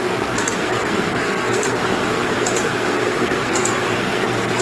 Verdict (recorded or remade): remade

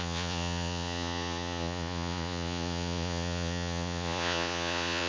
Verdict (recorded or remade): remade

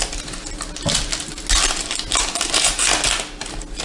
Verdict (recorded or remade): recorded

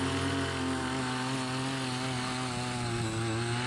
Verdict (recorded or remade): recorded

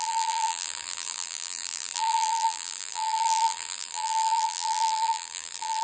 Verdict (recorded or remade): remade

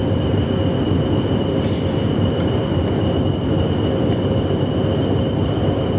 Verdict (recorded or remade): remade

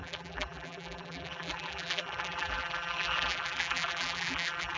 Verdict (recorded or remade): remade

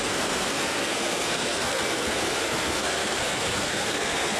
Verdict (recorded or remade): remade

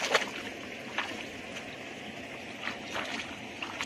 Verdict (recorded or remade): recorded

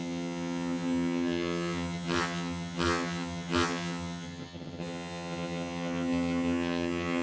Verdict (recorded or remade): remade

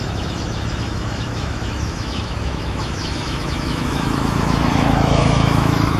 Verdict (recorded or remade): remade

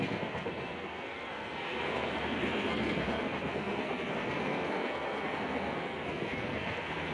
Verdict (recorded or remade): remade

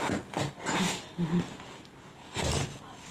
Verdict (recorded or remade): recorded